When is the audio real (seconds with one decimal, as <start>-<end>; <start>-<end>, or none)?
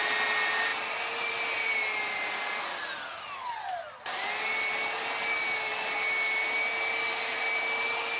0.0-8.2